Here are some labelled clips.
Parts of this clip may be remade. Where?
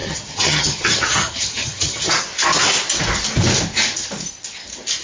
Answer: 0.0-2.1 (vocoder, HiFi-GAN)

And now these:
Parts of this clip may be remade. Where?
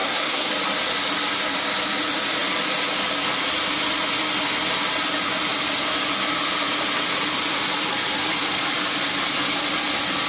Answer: 0.0-0.5 (codec, SNAC)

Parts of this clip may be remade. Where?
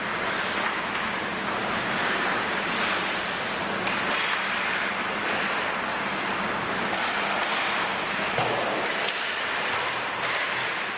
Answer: 1.3-2.3 (vocoder, BigVGAN v2); 5.9-11.0